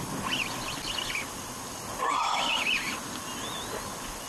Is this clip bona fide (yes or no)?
yes